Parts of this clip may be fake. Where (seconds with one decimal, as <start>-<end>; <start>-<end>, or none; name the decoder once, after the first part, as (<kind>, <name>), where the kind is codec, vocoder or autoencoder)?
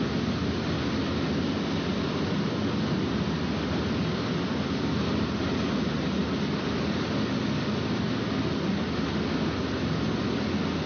none